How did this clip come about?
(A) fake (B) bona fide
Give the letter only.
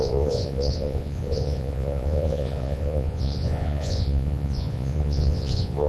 A